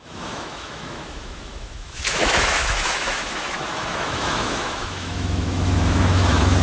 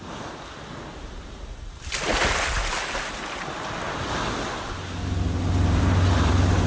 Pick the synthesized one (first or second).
first